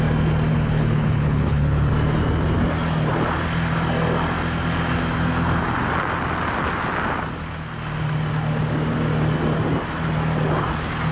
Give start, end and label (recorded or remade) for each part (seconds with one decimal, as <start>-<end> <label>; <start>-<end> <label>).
0.0-0.5 recorded; 0.5-1.9 remade; 1.9-11.1 recorded